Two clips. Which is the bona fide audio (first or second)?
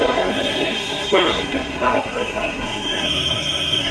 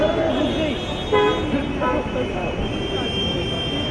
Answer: second